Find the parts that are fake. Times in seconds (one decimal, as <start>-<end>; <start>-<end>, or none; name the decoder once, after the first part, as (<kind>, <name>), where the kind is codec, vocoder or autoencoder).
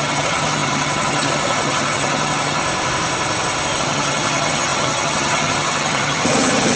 0.0-2.6 (vocoder, HiFi-GAN); 3.8-6.8